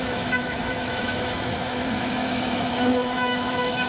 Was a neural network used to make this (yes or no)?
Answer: yes